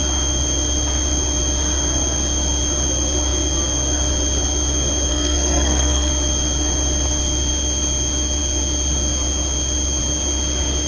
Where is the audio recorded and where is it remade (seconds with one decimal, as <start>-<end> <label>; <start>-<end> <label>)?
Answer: 0.0-5.1 recorded; 5.1-6.1 remade; 6.1-10.9 recorded